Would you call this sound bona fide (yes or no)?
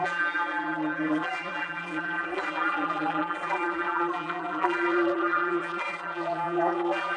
no